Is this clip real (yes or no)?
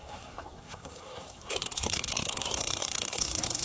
no